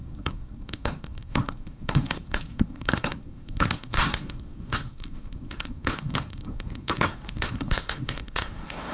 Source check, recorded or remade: remade